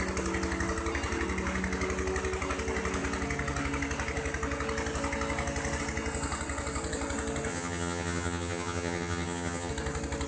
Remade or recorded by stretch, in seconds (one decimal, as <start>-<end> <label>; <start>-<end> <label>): 0.0-7.5 recorded; 7.5-9.7 remade; 9.7-10.3 recorded